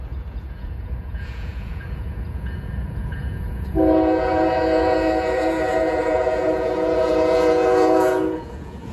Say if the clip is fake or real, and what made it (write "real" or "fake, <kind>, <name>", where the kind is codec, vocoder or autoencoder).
fake, vocoder, Vocos